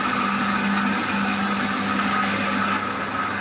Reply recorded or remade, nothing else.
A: recorded